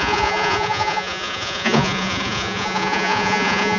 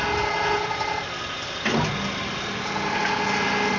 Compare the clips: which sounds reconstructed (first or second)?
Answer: first